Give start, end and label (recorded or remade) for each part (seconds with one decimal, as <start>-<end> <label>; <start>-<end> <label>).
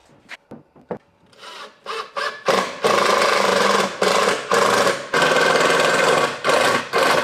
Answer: 0.0-7.2 recorded